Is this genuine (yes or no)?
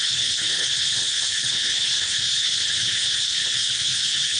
no